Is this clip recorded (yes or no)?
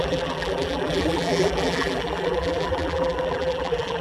no